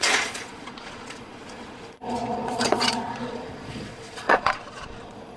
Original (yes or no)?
no